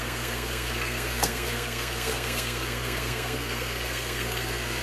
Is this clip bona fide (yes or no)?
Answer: no